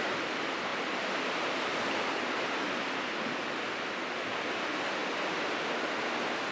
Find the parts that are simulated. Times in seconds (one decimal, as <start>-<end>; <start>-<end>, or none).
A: none